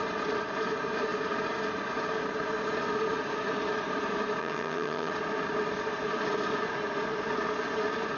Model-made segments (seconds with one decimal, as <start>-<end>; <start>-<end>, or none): 4.4-5.1